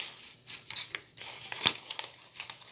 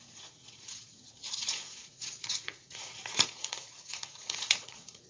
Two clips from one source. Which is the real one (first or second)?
first